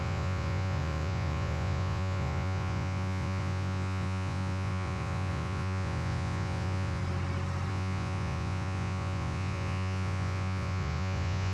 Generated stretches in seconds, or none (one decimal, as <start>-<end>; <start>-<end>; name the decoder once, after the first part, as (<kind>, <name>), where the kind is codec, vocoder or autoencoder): 0.0-7.0 (vocoder, Vocos); 7.7-11.5